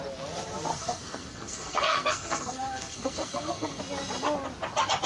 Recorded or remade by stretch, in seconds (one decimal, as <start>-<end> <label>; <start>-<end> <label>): 0.0-0.7 recorded; 0.7-3.8 remade; 3.8-5.1 recorded